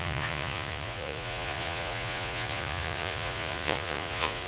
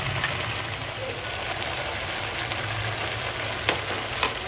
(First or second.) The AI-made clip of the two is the first